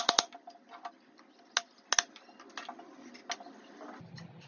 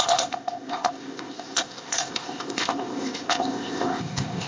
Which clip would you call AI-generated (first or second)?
second